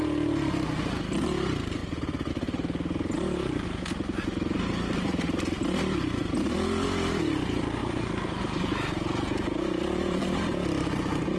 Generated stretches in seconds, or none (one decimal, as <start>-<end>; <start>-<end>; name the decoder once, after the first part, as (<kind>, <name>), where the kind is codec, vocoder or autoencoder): 7.8-8.4 (vocoder, BigVGAN v2); 9.8-10.4